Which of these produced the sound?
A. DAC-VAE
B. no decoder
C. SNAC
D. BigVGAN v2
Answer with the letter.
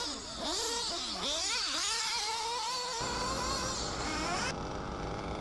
B